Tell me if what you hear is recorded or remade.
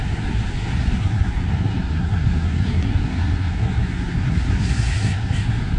remade